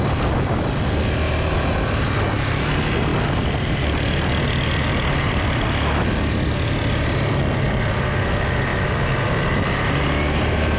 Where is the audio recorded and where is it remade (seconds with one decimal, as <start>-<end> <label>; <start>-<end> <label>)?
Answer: 0.0-10.8 recorded